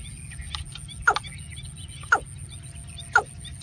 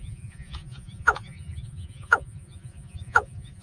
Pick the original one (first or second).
first